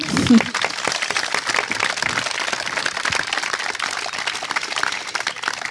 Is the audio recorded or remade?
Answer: recorded